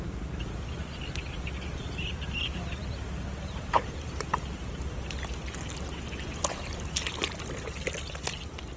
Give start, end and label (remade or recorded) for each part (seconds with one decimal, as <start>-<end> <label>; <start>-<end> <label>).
0.0-8.8 recorded